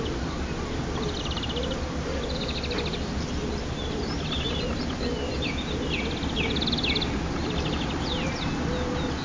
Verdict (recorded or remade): recorded